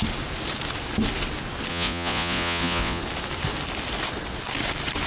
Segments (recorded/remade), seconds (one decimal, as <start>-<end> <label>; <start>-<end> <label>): 0.0-1.7 recorded; 1.7-3.0 remade; 3.0-5.1 recorded